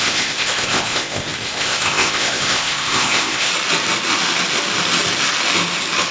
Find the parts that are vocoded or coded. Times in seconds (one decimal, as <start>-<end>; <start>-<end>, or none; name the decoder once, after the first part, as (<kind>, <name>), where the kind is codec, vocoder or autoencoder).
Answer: 0.0-3.5 (codec, ZipCodec)